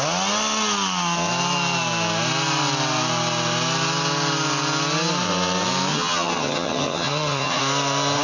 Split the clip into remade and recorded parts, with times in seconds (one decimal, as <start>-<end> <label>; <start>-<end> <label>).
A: 0.0-5.9 recorded; 5.9-7.6 remade; 7.6-8.2 recorded